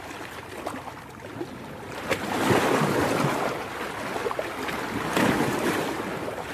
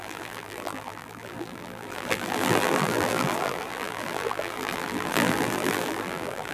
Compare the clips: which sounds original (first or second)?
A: first